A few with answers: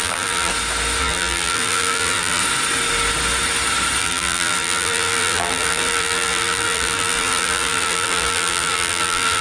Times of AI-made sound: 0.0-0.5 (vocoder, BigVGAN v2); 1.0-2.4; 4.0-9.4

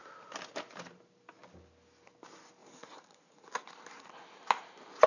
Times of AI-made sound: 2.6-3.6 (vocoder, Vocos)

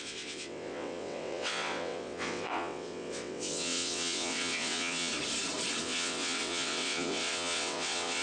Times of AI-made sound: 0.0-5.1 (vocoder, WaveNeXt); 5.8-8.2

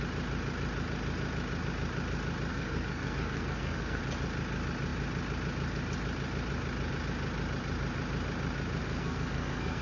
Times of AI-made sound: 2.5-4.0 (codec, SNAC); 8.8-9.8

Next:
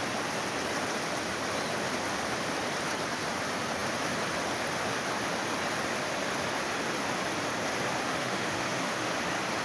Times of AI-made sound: 8.0-9.1 (autoencoder, DAC-VAE)

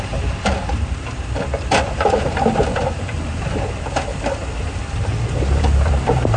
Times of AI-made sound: 0.0-4.1 (vocoder, BigVGAN v2); 4.6-6.4

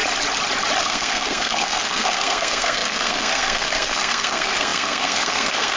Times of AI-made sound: 0.8-5.8 (codec, SNAC)

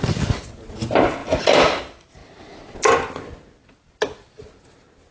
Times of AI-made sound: none